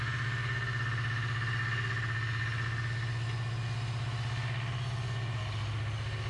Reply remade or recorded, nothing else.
recorded